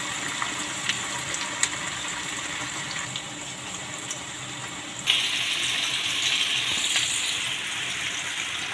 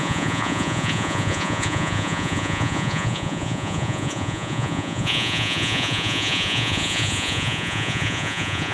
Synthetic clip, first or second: second